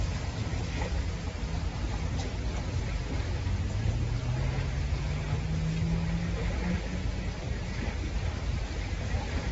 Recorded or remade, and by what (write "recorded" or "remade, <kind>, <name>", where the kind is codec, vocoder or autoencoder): recorded